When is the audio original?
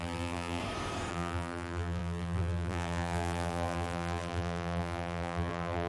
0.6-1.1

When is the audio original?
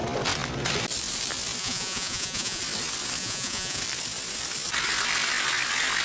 0.0-1.6; 2.6-3.2; 3.8-6.0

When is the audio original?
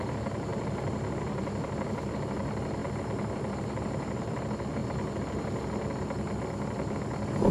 2.8-3.7; 4.8-7.5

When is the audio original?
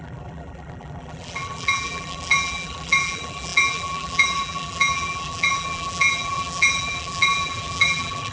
none